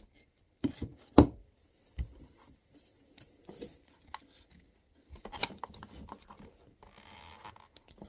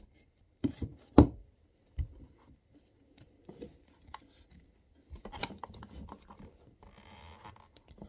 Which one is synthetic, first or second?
second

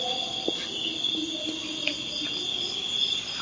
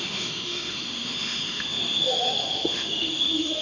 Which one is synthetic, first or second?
second